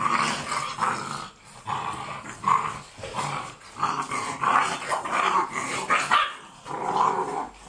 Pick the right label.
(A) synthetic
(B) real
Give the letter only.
B